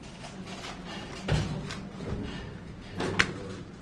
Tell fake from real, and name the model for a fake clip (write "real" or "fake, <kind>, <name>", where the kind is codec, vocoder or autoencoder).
real